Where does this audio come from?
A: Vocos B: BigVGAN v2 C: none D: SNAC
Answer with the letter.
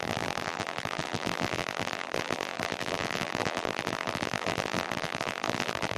B